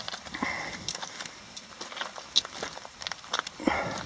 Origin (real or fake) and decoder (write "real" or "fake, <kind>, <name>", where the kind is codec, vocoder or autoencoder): real